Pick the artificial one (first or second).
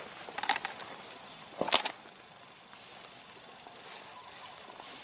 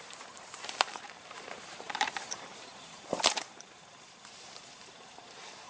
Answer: second